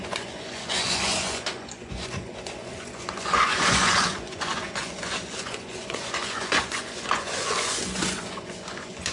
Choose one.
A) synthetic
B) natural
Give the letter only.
A